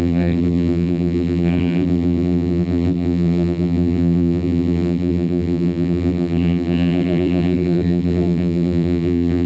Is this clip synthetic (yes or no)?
yes